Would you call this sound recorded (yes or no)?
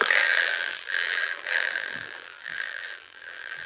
no